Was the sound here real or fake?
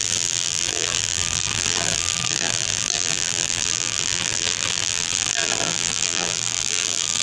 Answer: fake